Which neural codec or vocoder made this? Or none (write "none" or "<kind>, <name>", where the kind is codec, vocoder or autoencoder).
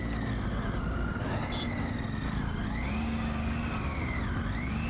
none